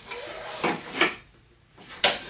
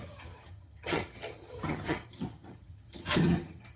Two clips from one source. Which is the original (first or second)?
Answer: first